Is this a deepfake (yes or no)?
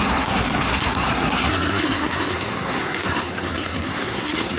yes